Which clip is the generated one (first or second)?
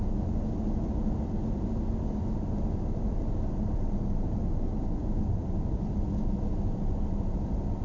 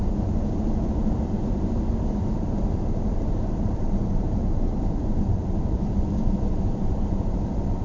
second